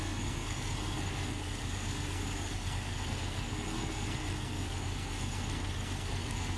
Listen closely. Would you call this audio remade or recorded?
remade